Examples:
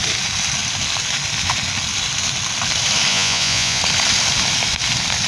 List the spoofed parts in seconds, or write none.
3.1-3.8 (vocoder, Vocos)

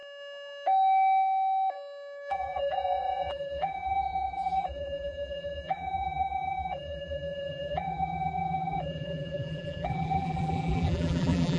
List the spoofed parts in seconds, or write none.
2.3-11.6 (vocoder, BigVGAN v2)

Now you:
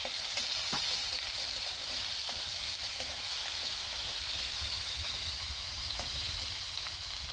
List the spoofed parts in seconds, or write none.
2.5-6.3 (autoencoder, DAC-VAE)

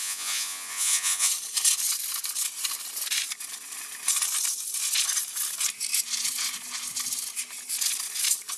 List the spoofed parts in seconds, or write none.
0.0-1.3 (vocoder, Vocos)

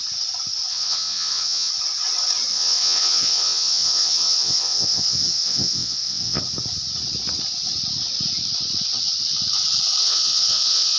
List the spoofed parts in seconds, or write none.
0.7-1.7 (vocoder, WaveNeXt); 2.5-6.4; 10.0-11.0